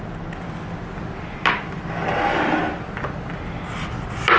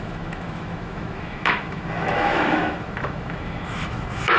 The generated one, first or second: second